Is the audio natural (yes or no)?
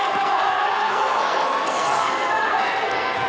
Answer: no